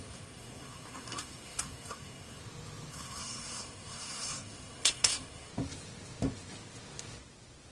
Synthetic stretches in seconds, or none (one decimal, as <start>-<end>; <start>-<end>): 0.0-2.4; 2.9-5.5